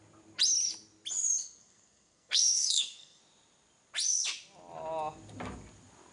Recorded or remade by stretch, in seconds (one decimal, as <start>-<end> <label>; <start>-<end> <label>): 0.0-1.4 recorded; 1.4-3.2 remade; 3.2-6.1 recorded